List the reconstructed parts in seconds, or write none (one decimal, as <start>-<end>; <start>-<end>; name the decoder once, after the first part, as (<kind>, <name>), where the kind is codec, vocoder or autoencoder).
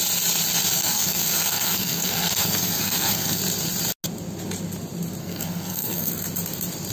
0.7-3.4 (codec, SNAC); 5.2-6.1